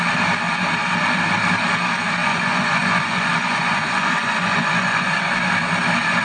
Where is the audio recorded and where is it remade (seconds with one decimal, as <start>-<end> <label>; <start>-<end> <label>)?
0.0-2.2 recorded; 2.2-5.3 remade; 5.3-6.2 recorded